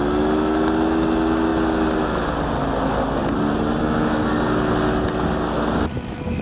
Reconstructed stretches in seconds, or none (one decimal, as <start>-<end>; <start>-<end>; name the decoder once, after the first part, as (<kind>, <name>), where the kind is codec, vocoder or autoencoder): 3.2-3.8 (vocoder, BigVGAN v2)